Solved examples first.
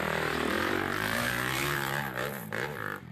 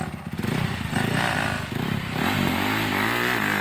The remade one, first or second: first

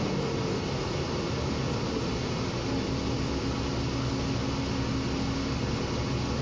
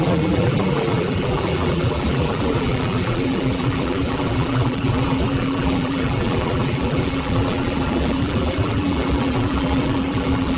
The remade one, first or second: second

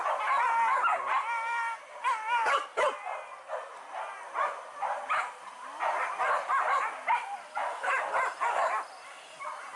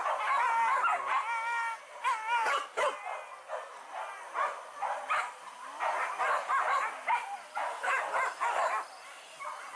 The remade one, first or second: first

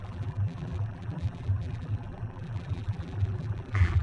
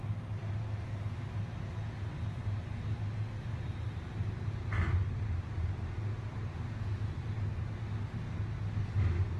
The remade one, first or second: first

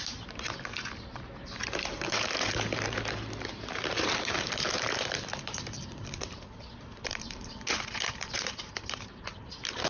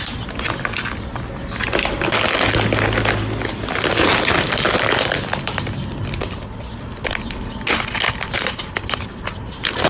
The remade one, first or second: first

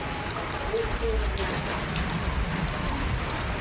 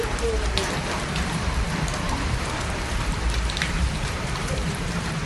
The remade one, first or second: second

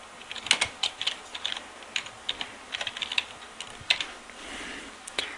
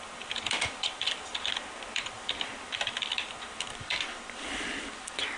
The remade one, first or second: second